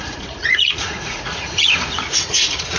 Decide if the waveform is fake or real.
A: fake